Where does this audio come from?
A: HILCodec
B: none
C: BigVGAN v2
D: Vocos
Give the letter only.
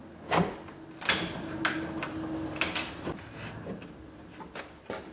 B